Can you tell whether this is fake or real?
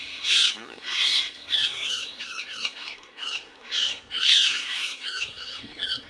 fake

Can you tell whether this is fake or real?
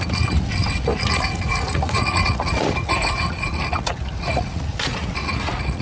fake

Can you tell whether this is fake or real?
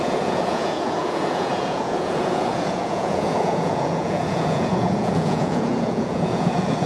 fake